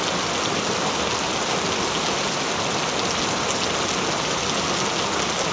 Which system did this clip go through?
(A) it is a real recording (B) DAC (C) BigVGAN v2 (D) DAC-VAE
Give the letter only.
A